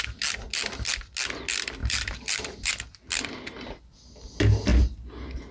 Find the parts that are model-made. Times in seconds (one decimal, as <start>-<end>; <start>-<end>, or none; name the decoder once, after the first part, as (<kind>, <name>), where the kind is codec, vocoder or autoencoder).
1.8-2.7 (vocoder, BigVGAN v2)